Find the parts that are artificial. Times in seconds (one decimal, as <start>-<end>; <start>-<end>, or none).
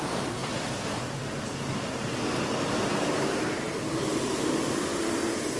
0.0-4.9